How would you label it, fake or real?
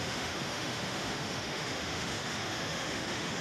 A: fake